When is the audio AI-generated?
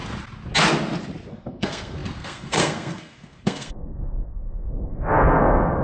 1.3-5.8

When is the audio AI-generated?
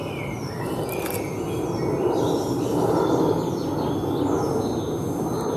0.0-0.6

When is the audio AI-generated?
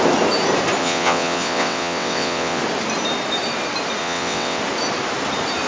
0.8-2.6; 4.0-4.6